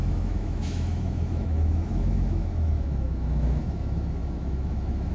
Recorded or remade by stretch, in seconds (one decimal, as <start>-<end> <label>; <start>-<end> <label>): 0.0-5.1 remade